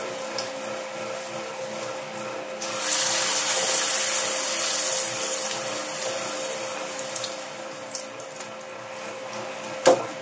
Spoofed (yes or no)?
no